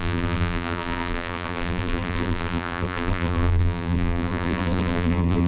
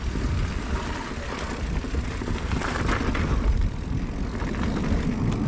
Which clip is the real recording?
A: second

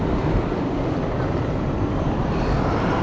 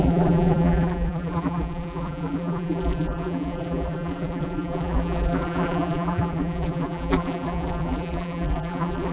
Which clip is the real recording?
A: first